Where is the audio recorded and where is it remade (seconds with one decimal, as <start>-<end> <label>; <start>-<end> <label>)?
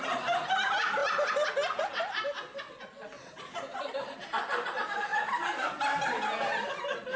0.0-7.2 recorded